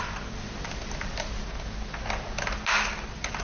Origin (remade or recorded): recorded